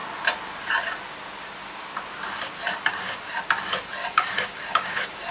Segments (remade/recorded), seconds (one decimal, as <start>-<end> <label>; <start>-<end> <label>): 0.0-2.7 recorded; 2.7-3.4 remade; 3.4-4.0 recorded; 4.0-5.3 remade